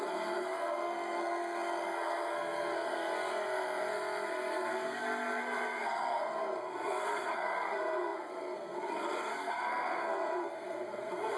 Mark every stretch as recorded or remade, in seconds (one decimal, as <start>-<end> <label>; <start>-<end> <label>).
0.0-11.4 remade